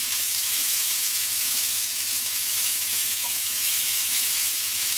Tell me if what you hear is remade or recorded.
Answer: remade